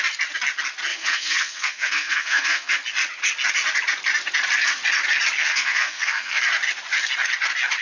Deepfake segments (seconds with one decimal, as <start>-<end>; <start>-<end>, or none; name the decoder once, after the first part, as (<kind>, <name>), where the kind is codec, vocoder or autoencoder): 0.9-2.7 (codec, SNAC); 5.4-6.4